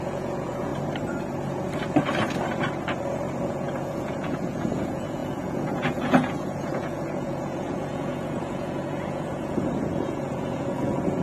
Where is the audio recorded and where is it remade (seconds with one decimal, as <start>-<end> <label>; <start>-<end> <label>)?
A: 0.0-0.7 remade; 0.7-3.5 recorded; 3.5-11.2 remade

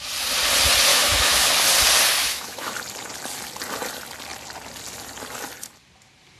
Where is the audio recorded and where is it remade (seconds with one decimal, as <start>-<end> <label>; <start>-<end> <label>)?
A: 0.0-0.9 recorded; 0.9-1.5 remade; 1.5-2.2 recorded; 2.2-2.7 remade; 2.7-6.4 recorded

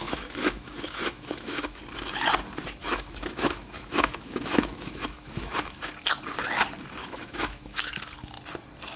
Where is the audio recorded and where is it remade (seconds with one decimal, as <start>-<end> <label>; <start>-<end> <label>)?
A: 0.0-1.8 remade; 1.8-2.8 recorded; 2.8-5.9 remade; 5.9-7.0 recorded; 7.0-7.9 remade; 7.9-9.0 recorded

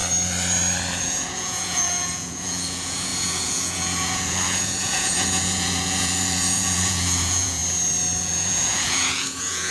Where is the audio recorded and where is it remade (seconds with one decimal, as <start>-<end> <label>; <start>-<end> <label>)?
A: 0.0-1.0 recorded; 1.0-7.6 remade; 7.6-8.2 recorded; 8.2-9.7 remade

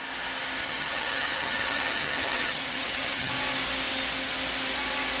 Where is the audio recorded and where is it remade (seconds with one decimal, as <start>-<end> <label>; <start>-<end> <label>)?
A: 0.0-0.6 recorded; 0.6-3.3 remade; 3.3-5.2 recorded